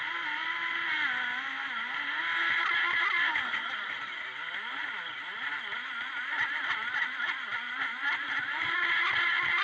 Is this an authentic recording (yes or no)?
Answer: yes